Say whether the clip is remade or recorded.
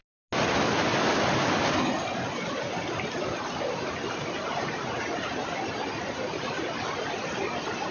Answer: recorded